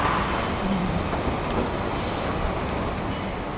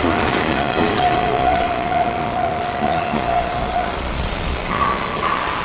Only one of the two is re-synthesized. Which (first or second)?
second